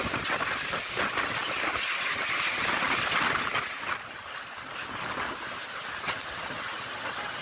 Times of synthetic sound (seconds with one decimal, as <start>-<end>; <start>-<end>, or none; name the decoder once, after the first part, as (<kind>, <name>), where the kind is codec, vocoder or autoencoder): none